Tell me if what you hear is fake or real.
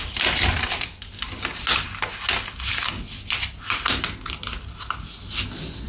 real